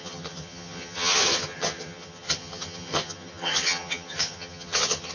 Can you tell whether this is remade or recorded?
remade